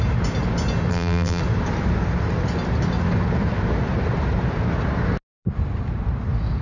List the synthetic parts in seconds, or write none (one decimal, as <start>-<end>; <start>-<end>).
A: 0.9-1.4